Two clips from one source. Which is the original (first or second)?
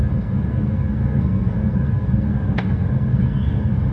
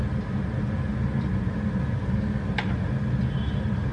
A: second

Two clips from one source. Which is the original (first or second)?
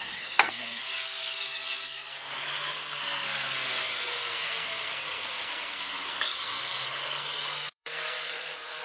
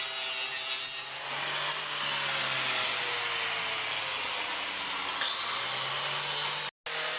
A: second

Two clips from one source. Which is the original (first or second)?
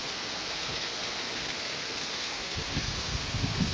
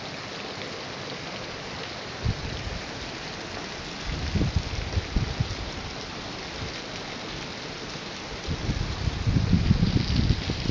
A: second